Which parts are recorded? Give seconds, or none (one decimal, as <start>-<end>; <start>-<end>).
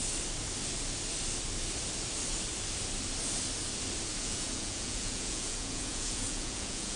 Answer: 0.0-4.2